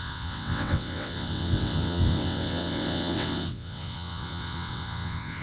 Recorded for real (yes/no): no